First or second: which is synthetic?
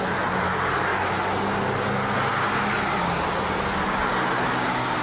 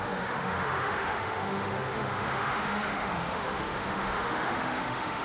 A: second